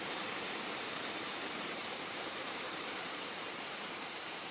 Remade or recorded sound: remade